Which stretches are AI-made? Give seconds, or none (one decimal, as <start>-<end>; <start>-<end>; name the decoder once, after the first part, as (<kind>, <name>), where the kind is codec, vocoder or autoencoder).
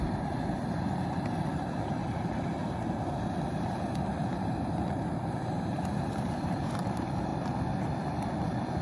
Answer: 0.0-2.6 (vocoder, BigVGAN v2); 3.4-7.3; 7.8-8.8